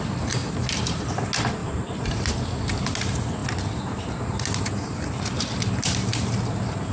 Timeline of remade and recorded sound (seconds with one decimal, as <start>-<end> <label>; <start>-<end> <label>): 0.0-1.6 recorded; 1.6-2.2 remade; 2.2-6.9 recorded

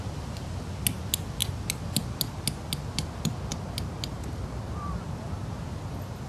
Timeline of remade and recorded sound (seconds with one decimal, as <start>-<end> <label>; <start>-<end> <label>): 0.0-6.3 recorded

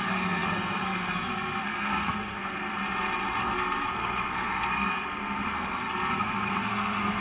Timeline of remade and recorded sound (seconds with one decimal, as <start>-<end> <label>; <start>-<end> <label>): 0.0-2.8 remade; 2.8-3.4 recorded; 3.4-7.2 remade

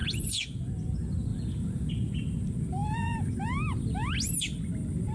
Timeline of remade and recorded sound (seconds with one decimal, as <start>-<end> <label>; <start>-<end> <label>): 0.0-0.7 remade; 0.7-1.3 recorded; 1.3-1.9 remade; 1.9-2.8 recorded; 2.8-3.3 remade; 3.3-5.1 recorded

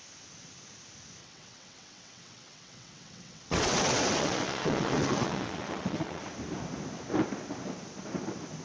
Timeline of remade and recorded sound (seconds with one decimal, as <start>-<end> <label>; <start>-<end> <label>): 0.0-1.2 recorded; 1.2-6.2 remade; 6.2-8.6 recorded

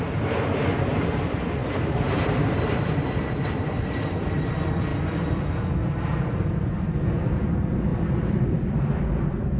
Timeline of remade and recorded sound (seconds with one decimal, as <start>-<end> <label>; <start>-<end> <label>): 0.0-1.6 recorded; 1.6-4.5 remade; 4.5-4.9 recorded; 4.9-5.6 remade; 5.6-7.9 recorded; 7.9-9.1 remade; 9.1-9.6 recorded

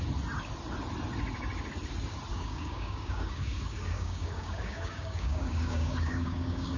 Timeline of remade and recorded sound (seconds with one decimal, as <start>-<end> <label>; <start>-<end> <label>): 0.0-2.3 recorded; 2.3-6.8 remade

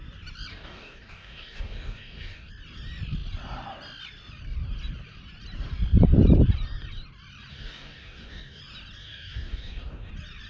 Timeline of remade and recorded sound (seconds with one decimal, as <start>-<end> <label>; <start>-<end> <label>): 0.0-0.5 recorded; 0.5-2.5 remade; 2.5-7.5 recorded; 7.5-8.6 remade; 8.6-9.0 recorded; 9.0-10.1 remade; 10.1-10.5 recorded